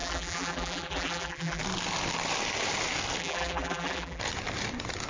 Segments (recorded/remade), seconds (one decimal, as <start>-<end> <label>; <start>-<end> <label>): 0.0-1.6 remade; 1.6-3.2 recorded; 3.2-4.2 remade; 4.2-5.1 recorded